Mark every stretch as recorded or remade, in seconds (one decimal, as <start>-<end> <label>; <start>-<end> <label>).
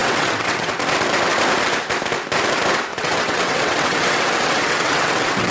0.0-0.7 remade; 0.7-2.9 recorded; 2.9-5.5 remade